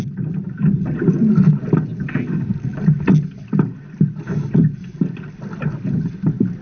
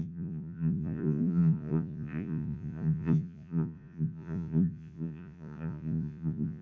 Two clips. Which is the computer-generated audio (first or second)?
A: second